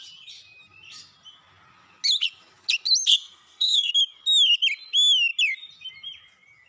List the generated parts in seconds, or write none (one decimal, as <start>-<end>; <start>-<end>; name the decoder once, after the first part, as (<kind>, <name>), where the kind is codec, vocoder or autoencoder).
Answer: 3.1-3.9 (codec, SNAC)